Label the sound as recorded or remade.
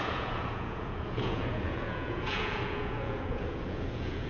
remade